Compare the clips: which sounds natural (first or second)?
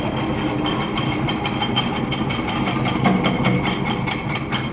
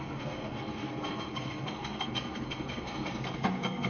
first